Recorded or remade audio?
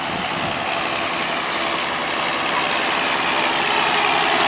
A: recorded